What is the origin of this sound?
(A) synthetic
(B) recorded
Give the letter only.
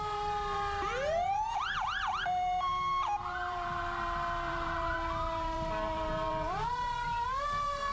A